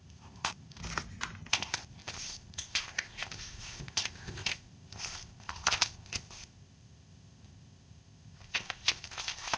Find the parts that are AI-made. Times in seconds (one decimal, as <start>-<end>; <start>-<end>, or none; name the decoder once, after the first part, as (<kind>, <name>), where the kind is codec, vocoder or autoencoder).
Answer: 0.0-0.8 (codec, ZipCodec); 1.5-9.6